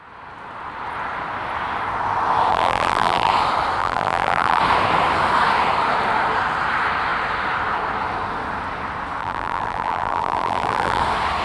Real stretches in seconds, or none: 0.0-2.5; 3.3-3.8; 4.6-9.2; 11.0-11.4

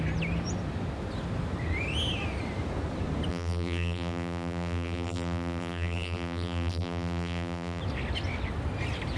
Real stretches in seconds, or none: 0.0-3.3; 7.8-9.2

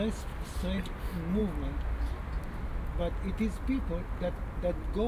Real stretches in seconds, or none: 0.0-5.1

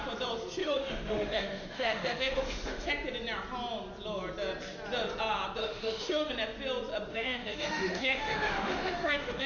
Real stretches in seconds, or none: 0.0-0.6; 2.9-5.6; 6.3-7.1

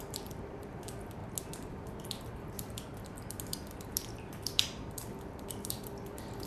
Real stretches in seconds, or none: 1.2-4.3

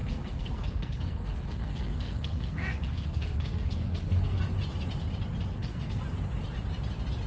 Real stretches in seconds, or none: 4.4-5.5; 6.0-7.3

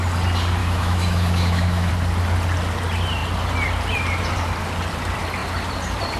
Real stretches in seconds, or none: 0.0-0.6; 1.9-6.2

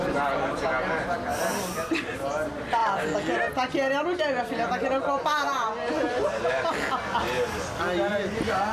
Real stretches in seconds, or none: 0.0-8.7